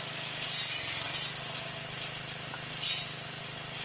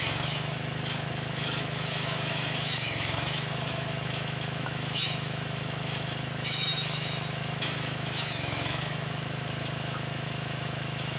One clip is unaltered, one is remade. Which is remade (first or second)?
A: second